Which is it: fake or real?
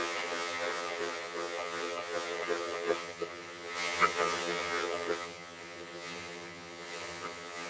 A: fake